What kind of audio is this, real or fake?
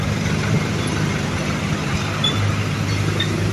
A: real